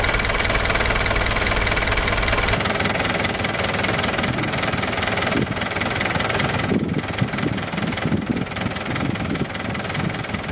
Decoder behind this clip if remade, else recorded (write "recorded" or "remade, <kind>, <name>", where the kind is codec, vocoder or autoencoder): recorded